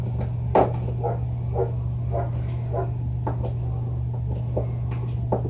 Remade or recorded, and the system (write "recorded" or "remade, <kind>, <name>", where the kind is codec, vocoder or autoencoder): recorded